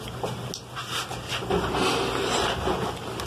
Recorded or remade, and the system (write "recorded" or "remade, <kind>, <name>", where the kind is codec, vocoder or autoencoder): recorded